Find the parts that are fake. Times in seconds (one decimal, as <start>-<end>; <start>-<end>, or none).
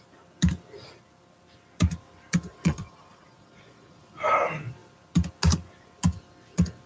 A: 2.5-4.1